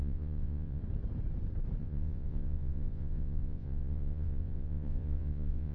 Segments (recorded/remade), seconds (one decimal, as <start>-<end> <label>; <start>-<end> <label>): 0.0-0.8 remade; 0.8-1.8 recorded; 1.8-5.7 remade